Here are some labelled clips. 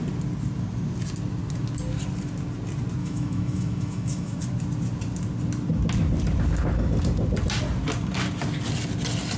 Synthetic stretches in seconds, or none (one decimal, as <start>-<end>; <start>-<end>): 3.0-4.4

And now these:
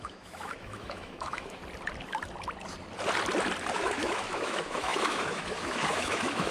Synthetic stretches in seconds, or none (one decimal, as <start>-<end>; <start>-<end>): 0.0-1.6; 3.7-6.5

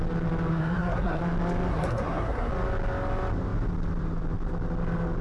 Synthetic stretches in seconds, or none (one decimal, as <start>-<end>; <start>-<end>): 0.5-1.2; 1.7-2.5

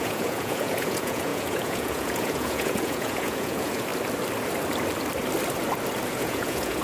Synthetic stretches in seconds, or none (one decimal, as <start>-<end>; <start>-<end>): 0.0-3.9; 6.1-6.8

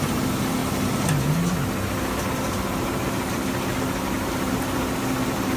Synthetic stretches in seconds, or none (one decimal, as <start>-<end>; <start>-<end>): none

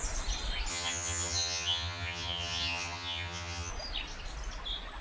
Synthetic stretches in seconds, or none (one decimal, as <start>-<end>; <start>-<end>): 0.7-3.7

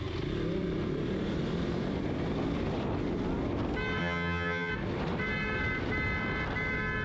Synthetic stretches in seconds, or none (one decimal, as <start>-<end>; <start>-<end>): 4.0-4.7